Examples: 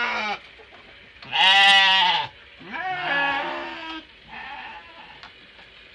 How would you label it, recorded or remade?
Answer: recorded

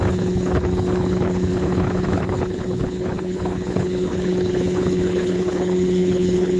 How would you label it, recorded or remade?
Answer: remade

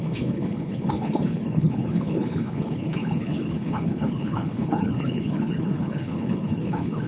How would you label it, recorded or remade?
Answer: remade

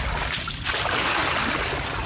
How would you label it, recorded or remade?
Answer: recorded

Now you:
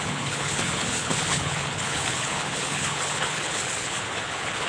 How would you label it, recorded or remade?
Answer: remade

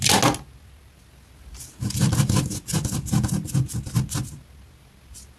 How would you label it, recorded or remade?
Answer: recorded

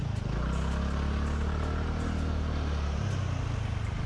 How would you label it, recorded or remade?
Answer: recorded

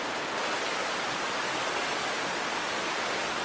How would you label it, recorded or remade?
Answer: recorded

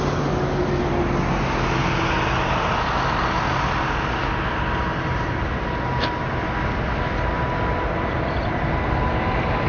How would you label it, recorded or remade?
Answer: recorded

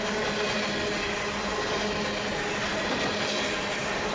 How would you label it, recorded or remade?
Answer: recorded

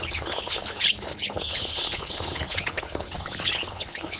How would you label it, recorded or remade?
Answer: remade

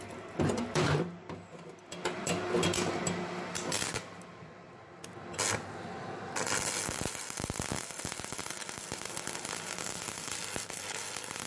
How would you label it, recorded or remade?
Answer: recorded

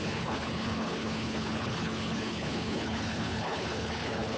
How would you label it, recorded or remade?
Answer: remade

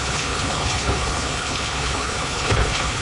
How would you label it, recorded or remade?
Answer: remade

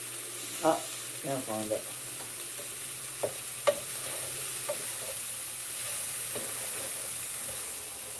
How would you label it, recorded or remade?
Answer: recorded